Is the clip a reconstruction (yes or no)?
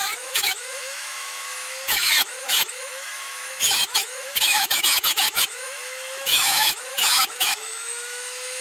yes